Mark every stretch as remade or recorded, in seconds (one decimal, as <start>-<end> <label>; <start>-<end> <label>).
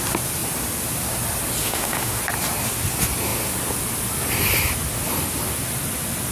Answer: 0.0-1.6 recorded; 1.6-2.2 remade; 2.2-6.3 recorded